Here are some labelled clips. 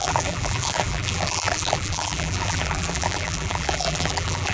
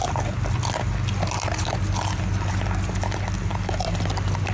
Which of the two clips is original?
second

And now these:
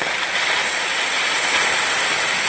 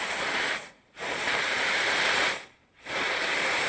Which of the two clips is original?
first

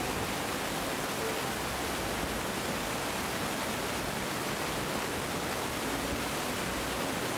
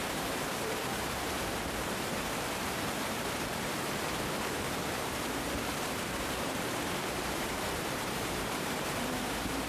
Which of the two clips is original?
first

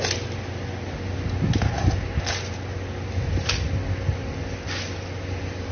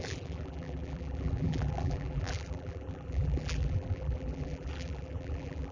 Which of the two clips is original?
first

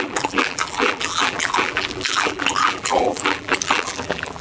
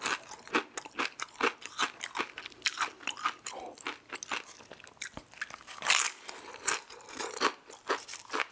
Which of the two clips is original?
second